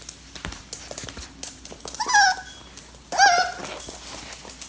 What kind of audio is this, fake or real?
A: real